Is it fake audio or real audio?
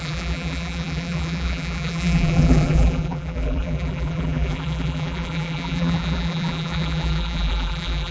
fake